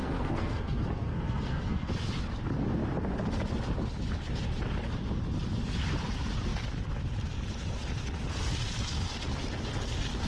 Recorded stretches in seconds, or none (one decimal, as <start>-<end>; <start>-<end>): 1.9-10.3